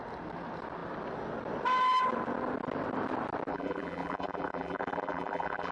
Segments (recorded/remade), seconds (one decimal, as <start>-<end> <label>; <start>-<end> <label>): 0.0-3.5 recorded; 3.5-5.7 remade